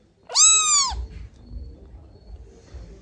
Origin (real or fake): real